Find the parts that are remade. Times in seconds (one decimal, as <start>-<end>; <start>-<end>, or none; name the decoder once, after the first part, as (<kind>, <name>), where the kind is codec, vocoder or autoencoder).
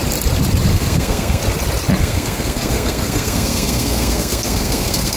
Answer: 0.7-1.4 (codec, SNAC); 2.0-5.2